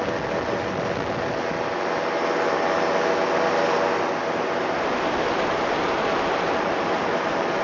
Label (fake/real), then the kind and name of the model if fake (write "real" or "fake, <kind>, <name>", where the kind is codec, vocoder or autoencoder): real